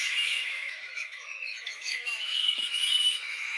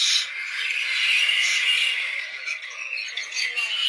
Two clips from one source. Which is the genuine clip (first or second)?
second